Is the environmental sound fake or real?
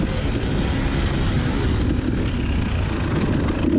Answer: real